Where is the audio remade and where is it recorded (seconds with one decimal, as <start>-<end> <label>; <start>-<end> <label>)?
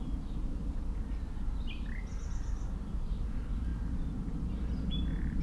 0.0-5.4 recorded